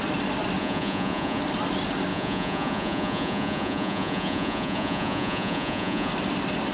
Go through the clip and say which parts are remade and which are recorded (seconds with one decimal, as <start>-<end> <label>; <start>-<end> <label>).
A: 0.0-0.6 recorded; 0.6-1.4 remade; 1.4-2.1 recorded; 2.1-6.1 remade; 6.1-6.7 recorded